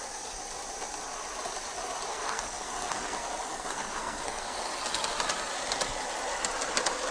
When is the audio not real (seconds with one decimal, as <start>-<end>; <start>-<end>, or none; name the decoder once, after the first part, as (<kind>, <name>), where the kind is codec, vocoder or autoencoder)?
2.1-4.6 (codec, SNAC)